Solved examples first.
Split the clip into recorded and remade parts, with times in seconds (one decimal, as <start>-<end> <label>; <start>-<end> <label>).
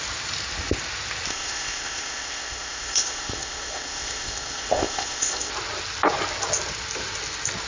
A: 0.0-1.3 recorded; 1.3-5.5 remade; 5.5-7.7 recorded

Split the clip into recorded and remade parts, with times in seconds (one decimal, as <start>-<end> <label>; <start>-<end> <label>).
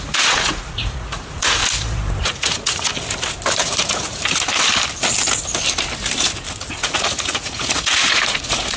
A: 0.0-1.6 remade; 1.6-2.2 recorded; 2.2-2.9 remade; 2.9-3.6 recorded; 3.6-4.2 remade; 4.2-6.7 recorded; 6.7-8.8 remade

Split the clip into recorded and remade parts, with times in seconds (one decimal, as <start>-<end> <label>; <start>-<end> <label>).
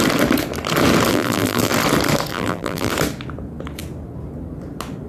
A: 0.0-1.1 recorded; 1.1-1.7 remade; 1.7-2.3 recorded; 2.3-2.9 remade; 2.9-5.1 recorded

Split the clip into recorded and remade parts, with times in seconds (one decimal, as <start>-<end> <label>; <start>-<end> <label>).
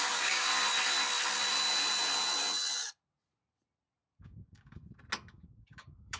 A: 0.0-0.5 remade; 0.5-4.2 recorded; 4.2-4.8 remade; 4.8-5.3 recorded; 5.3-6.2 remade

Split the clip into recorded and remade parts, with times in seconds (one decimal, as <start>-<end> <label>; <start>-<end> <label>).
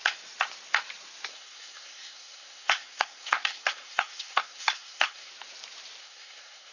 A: 0.0-1.3 recorded; 1.3-5.3 remade; 5.3-6.0 recorded; 6.0-6.7 remade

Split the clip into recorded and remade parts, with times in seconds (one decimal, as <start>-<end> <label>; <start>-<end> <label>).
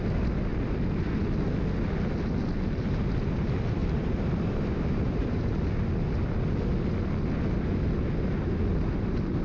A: 0.0-3.8 recorded; 3.8-5.5 remade; 5.5-9.4 recorded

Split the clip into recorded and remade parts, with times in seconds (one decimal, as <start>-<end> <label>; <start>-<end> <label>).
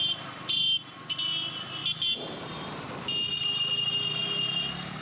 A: 0.0-5.0 recorded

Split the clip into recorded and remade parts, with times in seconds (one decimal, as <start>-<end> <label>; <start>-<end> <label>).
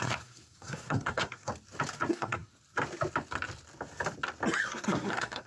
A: 0.0-1.5 remade; 1.5-2.1 recorded; 2.1-2.5 remade; 2.5-4.6 recorded; 4.6-5.5 remade